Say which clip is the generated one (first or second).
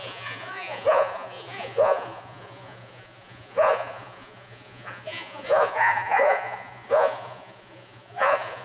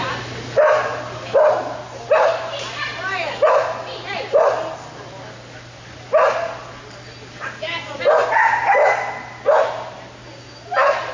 first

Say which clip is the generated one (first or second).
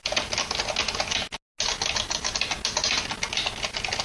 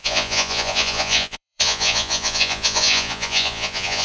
second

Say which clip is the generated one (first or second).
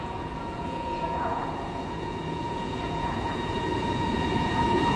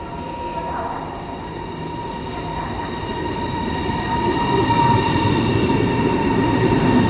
first